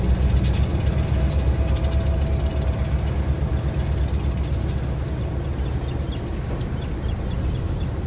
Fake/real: real